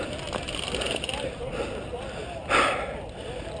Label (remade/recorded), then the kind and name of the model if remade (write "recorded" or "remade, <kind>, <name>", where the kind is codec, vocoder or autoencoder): recorded